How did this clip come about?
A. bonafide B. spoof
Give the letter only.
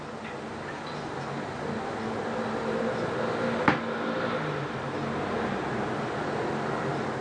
A